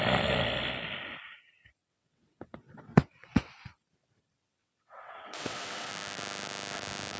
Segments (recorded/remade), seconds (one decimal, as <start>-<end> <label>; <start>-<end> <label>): 0.0-1.8 recorded; 1.8-3.5 remade; 3.5-4.6 recorded; 4.6-5.9 remade; 5.9-7.2 recorded